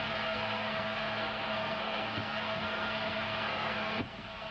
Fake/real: fake